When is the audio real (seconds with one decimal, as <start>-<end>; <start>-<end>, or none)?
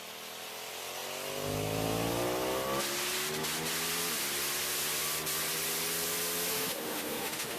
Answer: 0.0-6.5